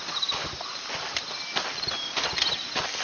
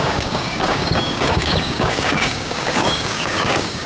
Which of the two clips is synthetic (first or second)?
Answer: second